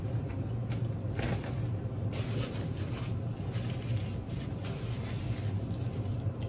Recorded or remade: recorded